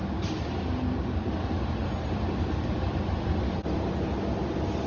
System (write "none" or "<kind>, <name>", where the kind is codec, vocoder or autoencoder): none